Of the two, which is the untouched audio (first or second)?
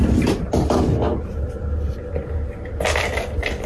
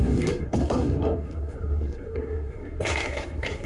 first